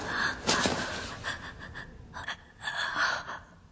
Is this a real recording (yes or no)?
yes